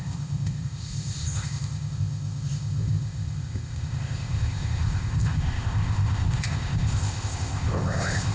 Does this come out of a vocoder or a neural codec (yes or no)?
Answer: yes